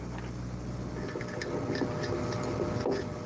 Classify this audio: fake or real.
real